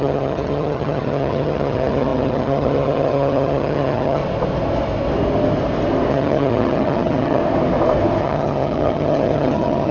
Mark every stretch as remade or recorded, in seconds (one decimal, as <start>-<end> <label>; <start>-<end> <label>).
0.0-4.2 remade; 4.2-6.1 recorded; 6.1-7.4 remade; 7.4-8.2 recorded; 8.2-9.9 remade